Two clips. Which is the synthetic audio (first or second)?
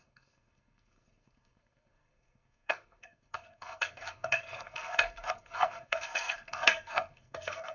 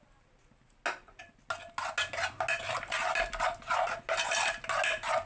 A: first